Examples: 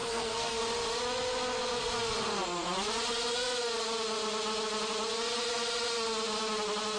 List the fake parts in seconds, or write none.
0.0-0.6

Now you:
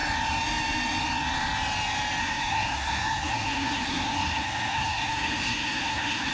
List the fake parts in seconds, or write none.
2.2-6.3

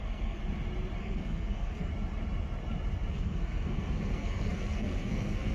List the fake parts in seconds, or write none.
0.0-0.4; 1.0-1.9; 3.1-5.5

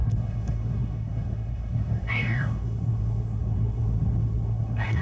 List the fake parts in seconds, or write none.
0.0-5.0

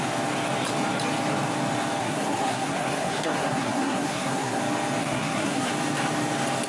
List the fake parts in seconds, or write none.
2.0-4.6; 5.0-5.7

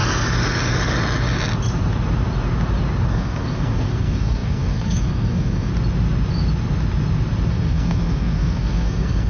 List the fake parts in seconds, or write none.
3.1-5.7; 7.5-9.3

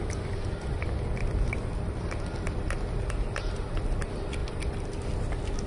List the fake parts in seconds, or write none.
none

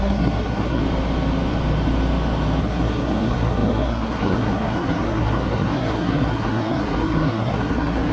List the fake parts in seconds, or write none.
0.0-0.8; 2.6-8.1